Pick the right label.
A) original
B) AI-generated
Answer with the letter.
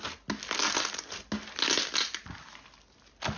A